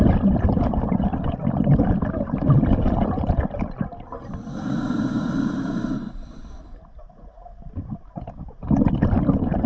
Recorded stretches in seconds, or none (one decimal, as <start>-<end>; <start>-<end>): 0.0-9.7